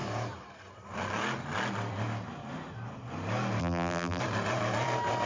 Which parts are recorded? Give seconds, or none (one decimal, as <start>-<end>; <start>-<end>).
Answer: 0.0-3.6; 4.2-5.3